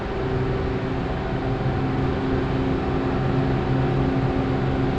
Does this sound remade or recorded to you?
recorded